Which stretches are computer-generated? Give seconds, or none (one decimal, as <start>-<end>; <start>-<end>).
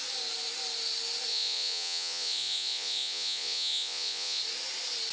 1.3-4.4